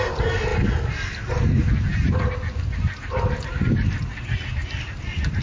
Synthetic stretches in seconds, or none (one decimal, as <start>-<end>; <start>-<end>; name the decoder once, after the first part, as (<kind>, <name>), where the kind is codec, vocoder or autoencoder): none